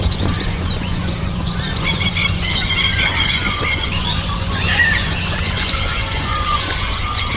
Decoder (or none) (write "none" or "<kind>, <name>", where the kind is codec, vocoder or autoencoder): vocoder, Vocos